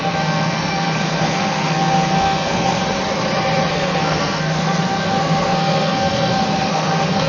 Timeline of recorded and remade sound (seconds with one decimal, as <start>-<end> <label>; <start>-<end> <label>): 0.0-2.8 remade; 2.8-3.7 recorded; 3.7-7.3 remade